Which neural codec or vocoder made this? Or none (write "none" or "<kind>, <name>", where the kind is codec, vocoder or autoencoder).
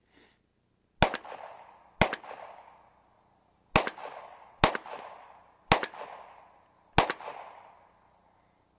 none